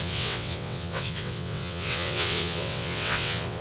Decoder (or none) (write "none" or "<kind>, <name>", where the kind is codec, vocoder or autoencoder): vocoder, WaveNeXt